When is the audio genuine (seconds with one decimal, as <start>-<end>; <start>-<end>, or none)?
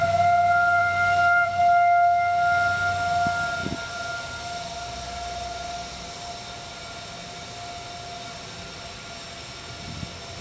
0.0-0.8; 1.6-10.4